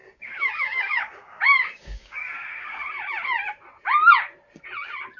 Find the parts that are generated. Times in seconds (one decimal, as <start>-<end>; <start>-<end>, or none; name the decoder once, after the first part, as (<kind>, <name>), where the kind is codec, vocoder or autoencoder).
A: 0.0-3.1 (codec, DAC)